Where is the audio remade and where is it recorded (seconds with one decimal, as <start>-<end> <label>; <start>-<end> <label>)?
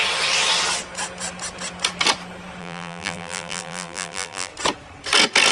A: 0.0-2.6 recorded; 2.6-4.5 remade; 4.5-5.5 recorded